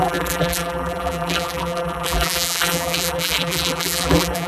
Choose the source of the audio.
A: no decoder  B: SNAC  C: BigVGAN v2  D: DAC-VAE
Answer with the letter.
C